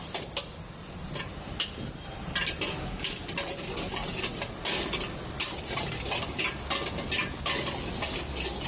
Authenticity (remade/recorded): recorded